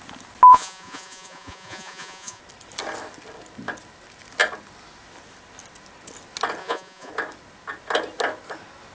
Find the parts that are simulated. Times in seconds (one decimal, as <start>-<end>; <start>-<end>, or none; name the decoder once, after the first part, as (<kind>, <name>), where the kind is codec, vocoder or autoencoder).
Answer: 0.5-2.4 (vocoder, Vocos); 6.6-7.1